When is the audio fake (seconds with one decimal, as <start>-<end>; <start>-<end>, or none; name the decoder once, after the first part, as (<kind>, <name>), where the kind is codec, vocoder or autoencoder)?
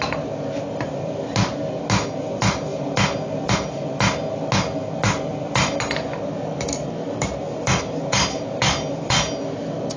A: none